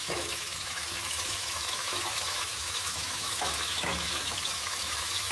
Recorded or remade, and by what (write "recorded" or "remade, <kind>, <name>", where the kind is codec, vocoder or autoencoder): remade, autoencoder, DAC-VAE